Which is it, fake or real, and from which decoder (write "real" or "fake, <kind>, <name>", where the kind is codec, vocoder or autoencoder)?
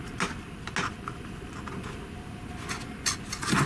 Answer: real